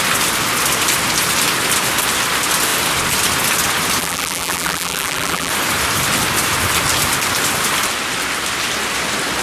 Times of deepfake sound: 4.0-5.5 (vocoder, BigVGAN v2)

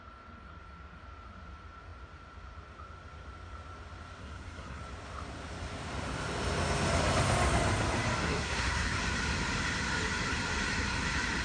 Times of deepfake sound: 4.2-4.8 (codec, SNAC); 8.2-9.0